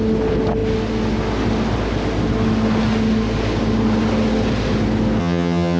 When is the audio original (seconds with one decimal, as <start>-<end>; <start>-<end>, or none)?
0.0-5.2